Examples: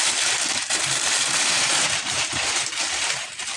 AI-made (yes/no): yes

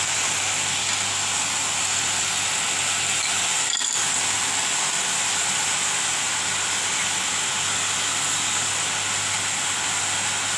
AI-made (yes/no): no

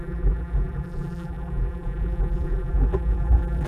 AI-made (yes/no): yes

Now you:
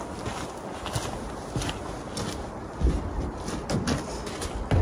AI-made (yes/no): no